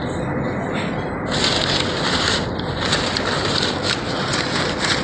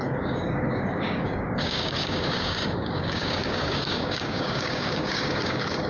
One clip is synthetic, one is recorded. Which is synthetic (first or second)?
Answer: second